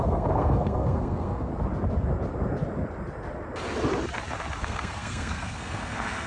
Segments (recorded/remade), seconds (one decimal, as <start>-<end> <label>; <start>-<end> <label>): 0.0-1.5 remade; 1.5-4.6 recorded; 4.6-6.3 remade